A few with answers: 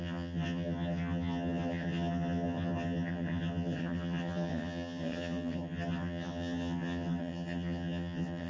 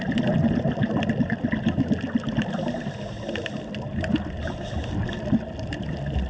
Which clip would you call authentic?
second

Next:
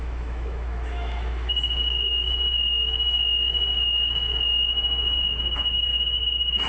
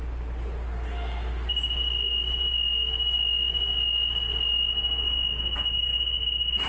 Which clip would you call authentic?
second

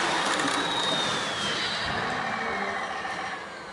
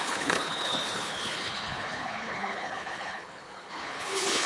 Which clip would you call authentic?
first